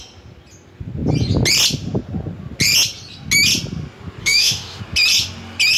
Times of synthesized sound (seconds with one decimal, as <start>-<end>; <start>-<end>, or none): 4.2-4.8